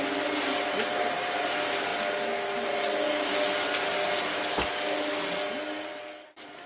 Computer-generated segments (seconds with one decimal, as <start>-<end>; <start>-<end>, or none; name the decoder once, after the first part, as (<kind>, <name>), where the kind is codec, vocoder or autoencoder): none